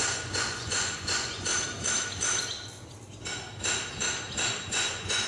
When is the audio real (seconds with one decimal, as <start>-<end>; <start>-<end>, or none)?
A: 1.5-4.7